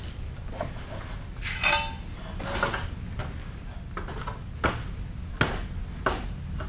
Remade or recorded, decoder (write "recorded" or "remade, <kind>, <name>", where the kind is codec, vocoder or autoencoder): recorded